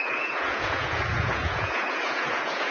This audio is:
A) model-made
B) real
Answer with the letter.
A